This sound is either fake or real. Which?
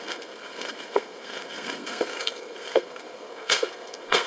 fake